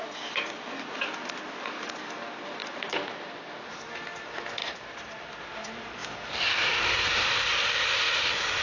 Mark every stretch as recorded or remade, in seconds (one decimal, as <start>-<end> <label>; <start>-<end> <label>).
0.0-2.6 recorded; 2.6-3.5 remade; 3.5-6.0 recorded; 6.0-7.5 remade; 7.5-8.6 recorded